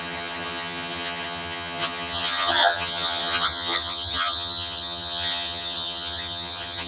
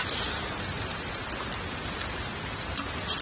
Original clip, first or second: second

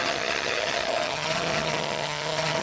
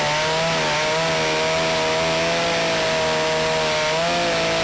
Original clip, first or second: second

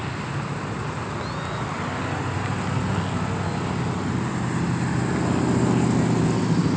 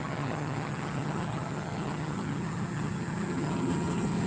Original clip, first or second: first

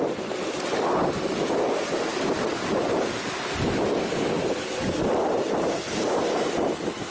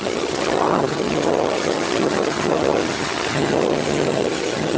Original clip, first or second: first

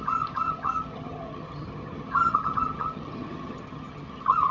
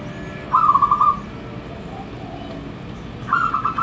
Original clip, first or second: second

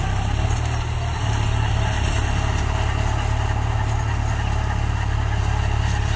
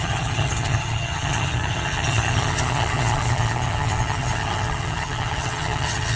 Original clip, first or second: first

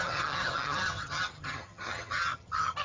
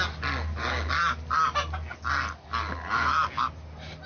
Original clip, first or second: second